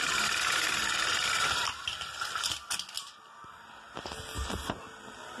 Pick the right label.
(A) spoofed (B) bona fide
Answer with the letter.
B